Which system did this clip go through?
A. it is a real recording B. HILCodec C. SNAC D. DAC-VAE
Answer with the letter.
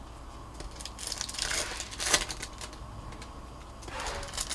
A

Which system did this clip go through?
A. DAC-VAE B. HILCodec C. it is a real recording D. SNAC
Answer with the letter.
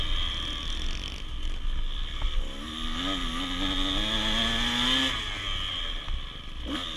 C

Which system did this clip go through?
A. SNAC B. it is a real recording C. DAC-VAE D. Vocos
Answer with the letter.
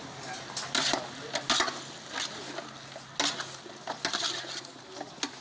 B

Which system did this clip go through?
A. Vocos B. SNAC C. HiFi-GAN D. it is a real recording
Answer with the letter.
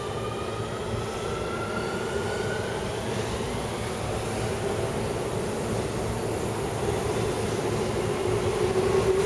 D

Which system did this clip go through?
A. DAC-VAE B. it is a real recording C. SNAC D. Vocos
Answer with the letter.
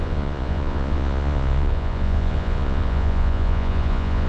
D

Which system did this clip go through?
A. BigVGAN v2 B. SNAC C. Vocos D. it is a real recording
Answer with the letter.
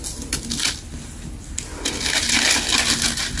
D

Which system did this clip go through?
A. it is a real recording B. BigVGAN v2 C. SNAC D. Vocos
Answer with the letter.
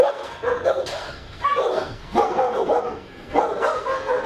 C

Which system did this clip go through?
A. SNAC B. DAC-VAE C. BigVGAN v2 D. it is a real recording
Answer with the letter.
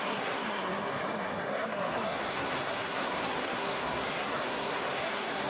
A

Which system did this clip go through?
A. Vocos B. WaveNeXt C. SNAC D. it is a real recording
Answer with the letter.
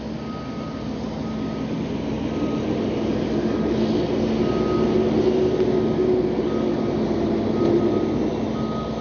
D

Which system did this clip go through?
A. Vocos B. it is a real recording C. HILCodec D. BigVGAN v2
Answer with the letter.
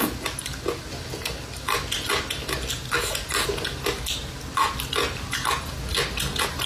B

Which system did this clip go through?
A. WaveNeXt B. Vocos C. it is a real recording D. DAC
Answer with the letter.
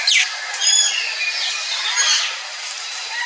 C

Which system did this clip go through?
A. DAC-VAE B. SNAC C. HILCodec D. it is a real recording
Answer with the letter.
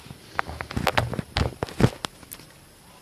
D